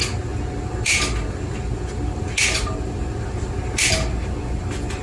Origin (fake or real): real